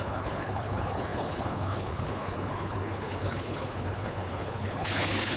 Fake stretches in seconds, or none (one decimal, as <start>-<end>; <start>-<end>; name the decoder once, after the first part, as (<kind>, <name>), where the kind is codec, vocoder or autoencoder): 0.0-5.4 (codec, HILCodec)